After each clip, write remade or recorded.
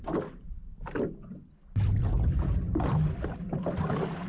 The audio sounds recorded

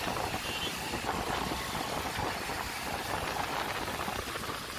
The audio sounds recorded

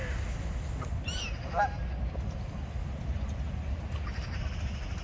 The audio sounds recorded